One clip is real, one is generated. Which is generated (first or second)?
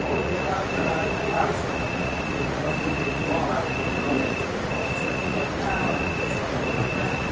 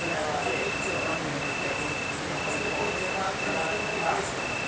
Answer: first